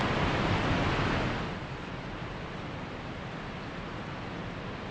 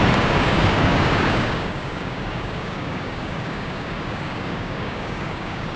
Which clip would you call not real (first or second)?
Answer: second